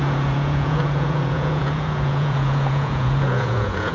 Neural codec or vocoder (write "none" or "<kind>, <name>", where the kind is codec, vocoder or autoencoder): vocoder, Vocos